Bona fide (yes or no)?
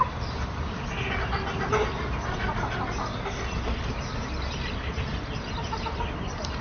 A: yes